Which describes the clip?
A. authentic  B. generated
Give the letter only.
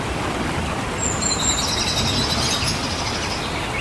A